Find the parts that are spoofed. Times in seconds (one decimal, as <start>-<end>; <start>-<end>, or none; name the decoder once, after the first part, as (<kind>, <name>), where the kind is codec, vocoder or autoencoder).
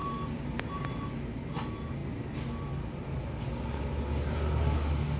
none